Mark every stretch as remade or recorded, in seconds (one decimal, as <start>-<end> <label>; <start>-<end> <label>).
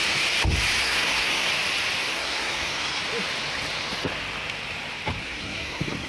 0.0-0.8 recorded; 0.8-1.5 remade; 1.5-2.1 recorded; 2.1-3.0 remade; 3.0-5.2 recorded; 5.2-6.1 remade